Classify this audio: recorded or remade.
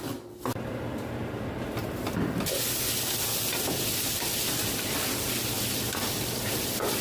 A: recorded